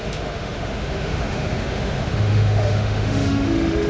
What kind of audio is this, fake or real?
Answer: fake